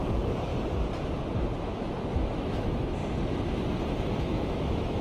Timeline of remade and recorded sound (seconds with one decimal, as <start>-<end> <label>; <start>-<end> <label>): 0.0-0.5 remade; 0.5-1.6 recorded; 1.6-3.0 remade; 3.0-4.2 recorded; 4.2-5.0 remade